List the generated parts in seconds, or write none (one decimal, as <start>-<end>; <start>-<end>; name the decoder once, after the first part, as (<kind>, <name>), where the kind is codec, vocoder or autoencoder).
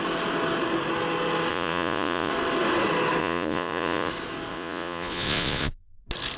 1.5-2.3 (vocoder, Vocos); 3.2-4.1; 4.5-6.0